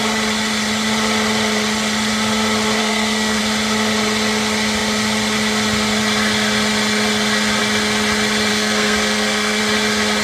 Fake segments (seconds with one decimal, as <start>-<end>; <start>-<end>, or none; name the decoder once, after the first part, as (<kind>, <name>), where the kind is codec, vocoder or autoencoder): 2.8-3.4 (codec, SNAC); 8.5-9.6